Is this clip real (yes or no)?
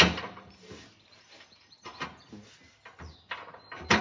yes